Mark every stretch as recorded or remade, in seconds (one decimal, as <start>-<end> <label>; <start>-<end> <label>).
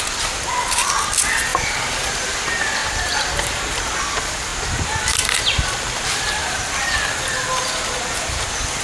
0.0-1.5 recorded; 1.5-2.3 remade; 2.3-2.8 recorded; 2.8-3.9 remade; 3.9-6.4 recorded; 6.4-7.7 remade; 7.7-8.8 recorded